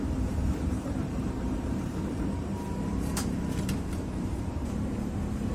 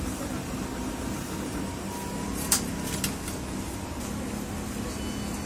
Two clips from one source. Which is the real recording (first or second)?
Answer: second